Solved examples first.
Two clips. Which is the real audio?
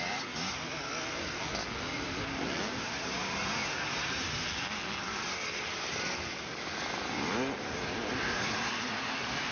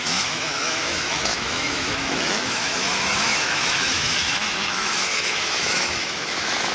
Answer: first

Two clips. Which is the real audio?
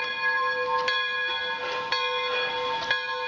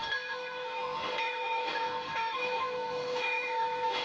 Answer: first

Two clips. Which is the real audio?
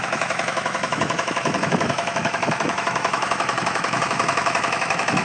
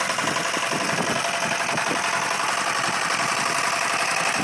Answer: second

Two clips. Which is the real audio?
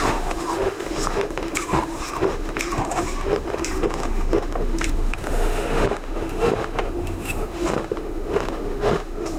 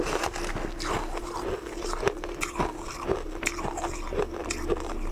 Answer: second